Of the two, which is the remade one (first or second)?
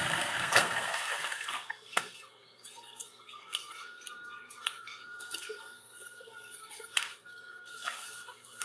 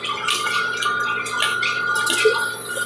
first